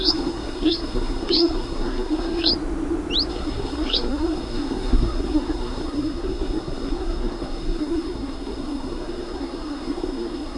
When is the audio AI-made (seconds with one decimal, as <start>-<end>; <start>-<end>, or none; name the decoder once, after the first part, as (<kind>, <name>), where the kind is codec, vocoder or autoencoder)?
0.0-2.5 (codec, SNAC); 3.3-10.6